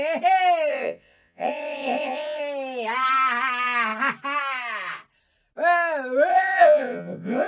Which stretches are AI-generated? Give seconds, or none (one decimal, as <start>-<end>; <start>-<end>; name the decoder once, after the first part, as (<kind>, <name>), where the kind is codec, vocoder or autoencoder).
0.7-2.4 (vocoder, WaveNeXt); 6.3-7.5